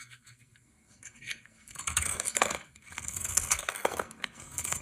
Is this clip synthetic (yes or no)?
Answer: yes